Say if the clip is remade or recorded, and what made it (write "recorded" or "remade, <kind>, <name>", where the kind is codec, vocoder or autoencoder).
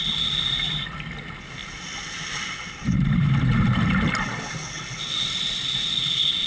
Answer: recorded